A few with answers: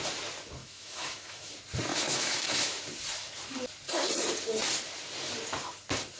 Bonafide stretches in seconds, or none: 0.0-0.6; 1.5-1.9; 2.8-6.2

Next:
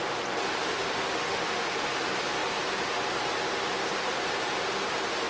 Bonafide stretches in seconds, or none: 0.0-0.7; 1.9-5.3

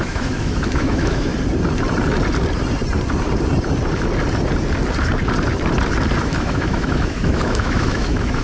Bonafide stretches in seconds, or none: 1.3-6.2

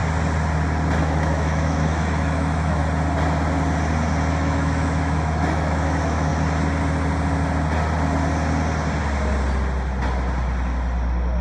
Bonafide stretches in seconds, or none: 0.0-1.0; 2.8-4.3; 6.3-11.4